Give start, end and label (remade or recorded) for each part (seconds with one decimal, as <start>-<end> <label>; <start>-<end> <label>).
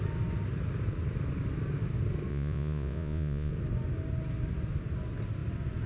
0.0-2.3 recorded; 2.3-3.5 remade; 3.5-5.9 recorded